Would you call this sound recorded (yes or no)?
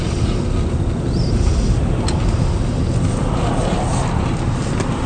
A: yes